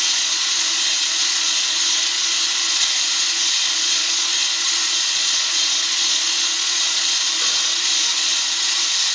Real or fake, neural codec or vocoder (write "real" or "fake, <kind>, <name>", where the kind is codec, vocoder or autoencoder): fake, vocoder, Vocos